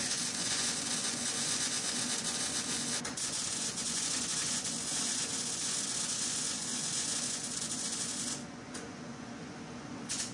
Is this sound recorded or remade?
remade